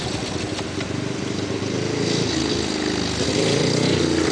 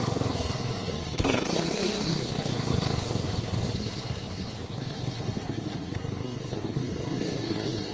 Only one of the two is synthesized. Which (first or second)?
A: second